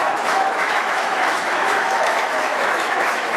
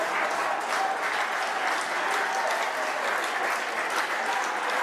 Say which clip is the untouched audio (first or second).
second